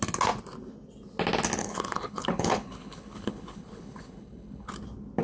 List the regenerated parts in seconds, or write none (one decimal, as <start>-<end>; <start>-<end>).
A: 1.6-4.7